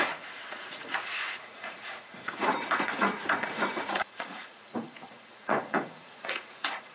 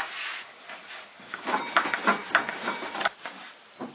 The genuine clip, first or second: second